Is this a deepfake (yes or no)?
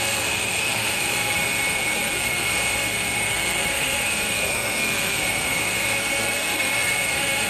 yes